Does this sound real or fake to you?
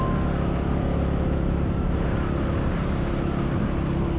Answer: real